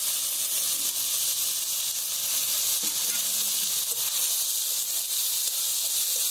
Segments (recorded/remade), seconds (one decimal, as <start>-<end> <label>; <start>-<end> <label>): 0.0-6.3 recorded